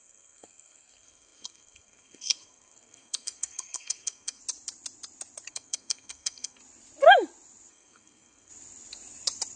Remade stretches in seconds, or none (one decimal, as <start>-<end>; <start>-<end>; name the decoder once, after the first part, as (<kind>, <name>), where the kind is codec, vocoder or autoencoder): 0.0-4.4 (codec, SNAC); 5.5-6.6; 7.7-8.5